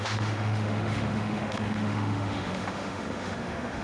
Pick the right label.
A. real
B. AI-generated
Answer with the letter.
B